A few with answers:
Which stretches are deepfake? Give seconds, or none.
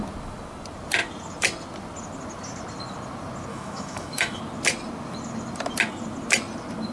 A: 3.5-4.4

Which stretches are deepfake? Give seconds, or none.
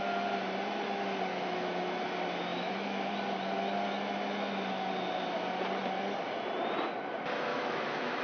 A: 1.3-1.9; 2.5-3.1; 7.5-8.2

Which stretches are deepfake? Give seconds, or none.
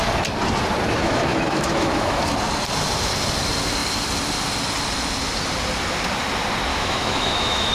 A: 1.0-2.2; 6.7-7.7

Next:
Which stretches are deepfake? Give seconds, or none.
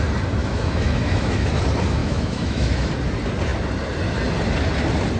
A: 0.4-1.6; 2.0-2.9